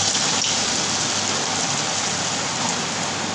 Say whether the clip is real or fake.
real